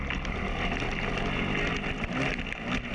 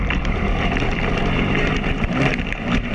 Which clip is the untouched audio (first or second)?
first